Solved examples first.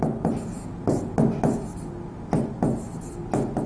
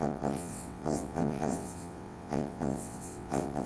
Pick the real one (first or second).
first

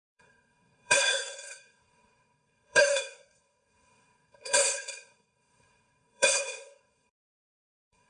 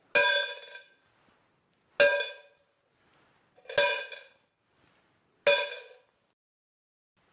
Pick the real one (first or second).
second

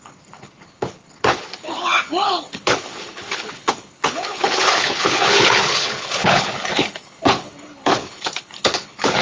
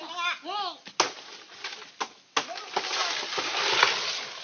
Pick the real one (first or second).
second